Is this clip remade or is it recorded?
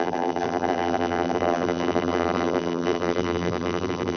remade